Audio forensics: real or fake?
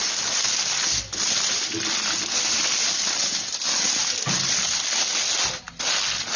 real